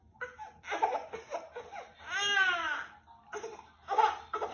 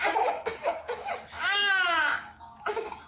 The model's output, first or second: second